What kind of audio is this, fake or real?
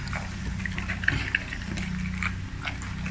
real